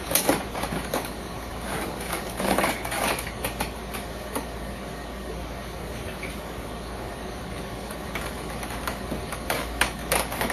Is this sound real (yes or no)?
no